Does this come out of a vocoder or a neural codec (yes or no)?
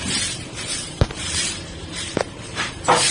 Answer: yes